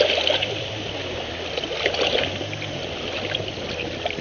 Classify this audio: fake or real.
fake